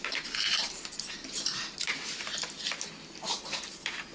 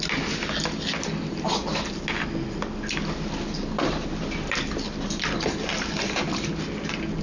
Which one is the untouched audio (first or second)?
second